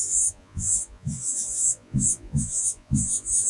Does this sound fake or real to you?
fake